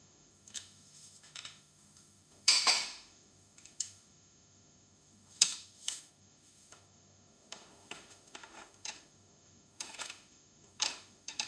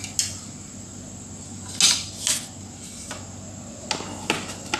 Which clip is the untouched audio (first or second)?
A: second